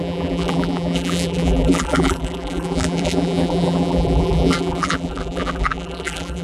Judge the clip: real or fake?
fake